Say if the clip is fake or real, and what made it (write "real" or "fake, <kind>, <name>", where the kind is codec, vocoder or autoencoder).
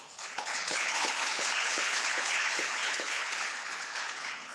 fake, codec, HILCodec